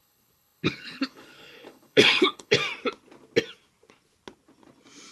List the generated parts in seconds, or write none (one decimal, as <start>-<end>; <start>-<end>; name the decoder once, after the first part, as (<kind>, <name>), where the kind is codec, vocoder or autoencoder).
0.0-2.6 (codec, HILCodec)